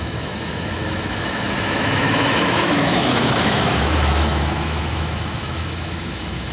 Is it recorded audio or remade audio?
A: remade